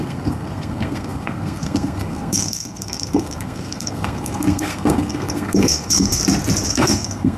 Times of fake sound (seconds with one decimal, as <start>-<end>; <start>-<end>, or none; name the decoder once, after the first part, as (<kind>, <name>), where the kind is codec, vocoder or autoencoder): 0.0-6.2 (codec, SNAC); 6.7-7.4